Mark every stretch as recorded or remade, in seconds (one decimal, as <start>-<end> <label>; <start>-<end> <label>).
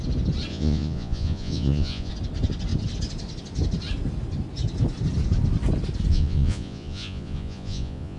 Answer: 0.0-0.5 recorded; 0.5-2.1 remade; 2.1-6.1 recorded; 6.1-8.2 remade